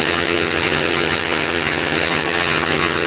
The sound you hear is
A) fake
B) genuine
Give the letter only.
A